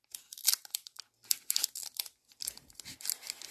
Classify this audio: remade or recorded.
recorded